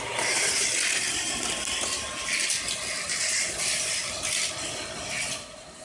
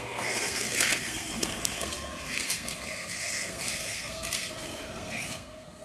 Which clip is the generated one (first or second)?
second